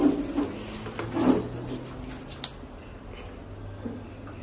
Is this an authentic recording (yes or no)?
yes